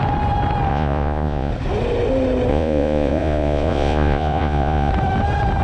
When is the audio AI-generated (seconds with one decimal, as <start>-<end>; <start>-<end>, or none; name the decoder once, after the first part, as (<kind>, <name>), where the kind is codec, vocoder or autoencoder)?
0.7-1.5 (vocoder, Vocos); 2.5-4.9